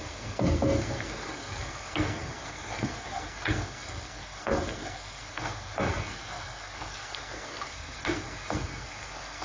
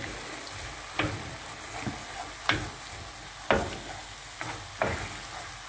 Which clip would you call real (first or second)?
second